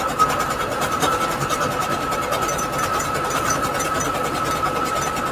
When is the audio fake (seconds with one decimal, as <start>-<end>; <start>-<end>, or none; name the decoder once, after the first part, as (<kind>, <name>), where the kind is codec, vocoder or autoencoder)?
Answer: 0.7-1.2 (vocoder, BigVGAN v2); 2.9-3.5